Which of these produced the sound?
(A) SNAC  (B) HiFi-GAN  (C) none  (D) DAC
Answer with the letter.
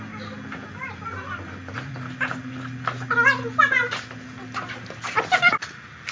C